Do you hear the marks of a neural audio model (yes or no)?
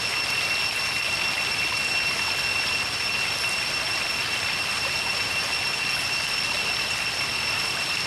no